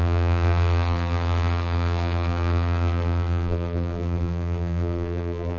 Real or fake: fake